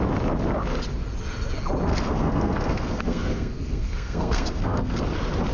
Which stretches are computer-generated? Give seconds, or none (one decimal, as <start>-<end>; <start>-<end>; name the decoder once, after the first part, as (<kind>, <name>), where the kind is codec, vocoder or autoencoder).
1.9-5.0 (codec, SNAC)